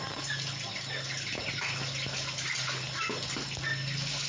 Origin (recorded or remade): recorded